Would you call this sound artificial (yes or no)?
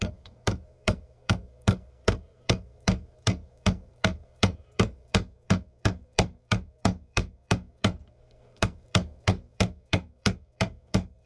yes